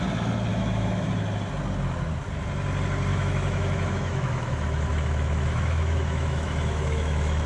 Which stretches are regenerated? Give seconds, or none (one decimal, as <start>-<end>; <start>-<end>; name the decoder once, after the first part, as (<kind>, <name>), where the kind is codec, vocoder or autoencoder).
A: 0.5-1.1 (autoencoder, DAC-VAE); 3.1-7.5